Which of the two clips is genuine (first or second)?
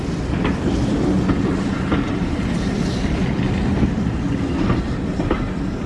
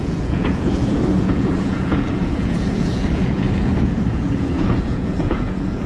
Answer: first